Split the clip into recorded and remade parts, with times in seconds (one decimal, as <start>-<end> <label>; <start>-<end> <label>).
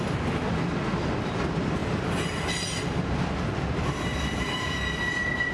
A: 0.0-5.5 recorded